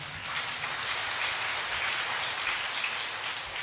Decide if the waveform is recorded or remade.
recorded